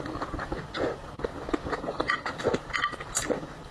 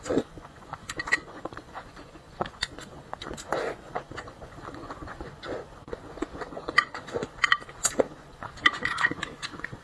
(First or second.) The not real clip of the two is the second